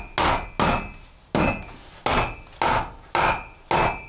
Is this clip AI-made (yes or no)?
no